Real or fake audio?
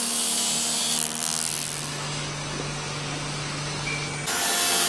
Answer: real